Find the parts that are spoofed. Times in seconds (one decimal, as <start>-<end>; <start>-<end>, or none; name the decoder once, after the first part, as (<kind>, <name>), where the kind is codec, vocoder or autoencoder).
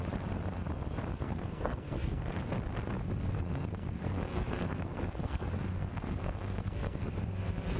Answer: 1.1-2.3 (codec, SNAC); 3.3-7.1